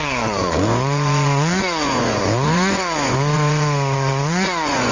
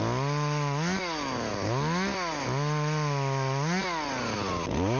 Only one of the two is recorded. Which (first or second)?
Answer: second